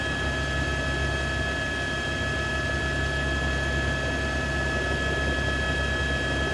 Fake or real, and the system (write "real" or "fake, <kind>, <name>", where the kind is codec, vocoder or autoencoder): real